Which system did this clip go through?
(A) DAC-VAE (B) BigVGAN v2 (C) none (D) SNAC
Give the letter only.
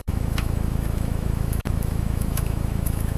A